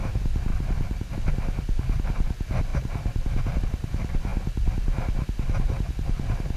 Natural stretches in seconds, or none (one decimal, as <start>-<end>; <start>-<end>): 0.0-6.6